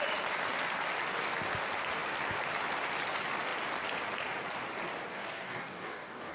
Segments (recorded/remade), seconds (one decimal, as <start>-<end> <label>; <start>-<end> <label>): 0.0-5.1 recorded; 5.1-6.3 remade

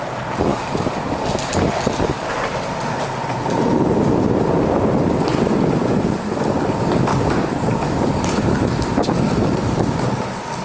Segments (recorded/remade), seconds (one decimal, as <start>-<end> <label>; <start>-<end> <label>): 0.0-7.1 recorded; 7.1-8.2 remade; 8.2-10.6 recorded

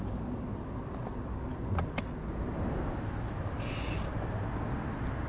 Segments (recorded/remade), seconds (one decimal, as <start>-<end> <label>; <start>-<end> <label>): 0.0-5.3 recorded

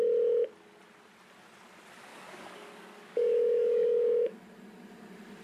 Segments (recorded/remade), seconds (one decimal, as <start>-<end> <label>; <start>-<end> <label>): 0.0-2.1 recorded; 2.1-4.4 remade; 4.4-5.4 recorded

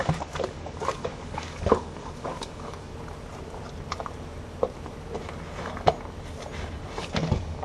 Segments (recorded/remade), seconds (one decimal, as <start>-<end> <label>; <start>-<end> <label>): 0.0-2.9 remade; 2.9-7.0 recorded; 7.0-7.6 remade